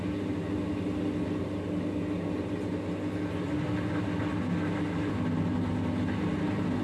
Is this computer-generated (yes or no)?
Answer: no